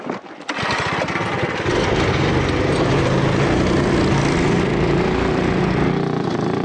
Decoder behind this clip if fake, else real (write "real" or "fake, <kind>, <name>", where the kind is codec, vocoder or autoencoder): real